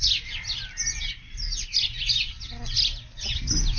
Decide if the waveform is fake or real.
real